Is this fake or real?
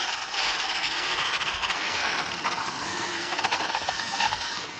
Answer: fake